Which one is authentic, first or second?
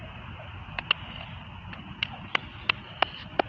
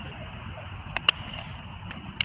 first